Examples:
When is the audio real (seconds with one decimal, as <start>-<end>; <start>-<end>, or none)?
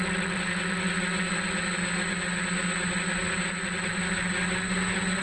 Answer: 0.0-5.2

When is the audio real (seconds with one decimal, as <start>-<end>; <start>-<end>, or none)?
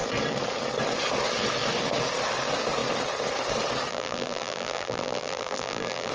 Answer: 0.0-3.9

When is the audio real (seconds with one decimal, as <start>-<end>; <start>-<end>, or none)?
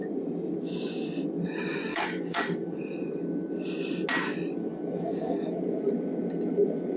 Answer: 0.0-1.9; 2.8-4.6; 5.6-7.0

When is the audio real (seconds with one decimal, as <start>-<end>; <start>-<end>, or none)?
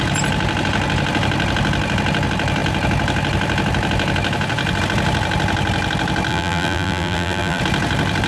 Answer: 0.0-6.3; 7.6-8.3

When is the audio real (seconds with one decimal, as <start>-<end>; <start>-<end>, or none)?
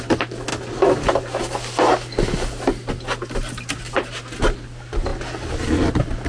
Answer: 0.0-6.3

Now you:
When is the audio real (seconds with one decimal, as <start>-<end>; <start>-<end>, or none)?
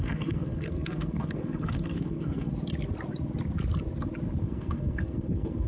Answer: 2.5-4.4